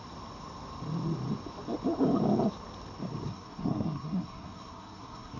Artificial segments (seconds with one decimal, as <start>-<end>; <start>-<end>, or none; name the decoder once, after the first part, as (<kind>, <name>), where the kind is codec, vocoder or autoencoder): 3.3-5.4 (codec, SNAC)